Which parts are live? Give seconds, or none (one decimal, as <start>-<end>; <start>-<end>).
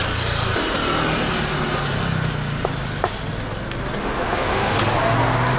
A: 0.0-4.0; 4.8-5.6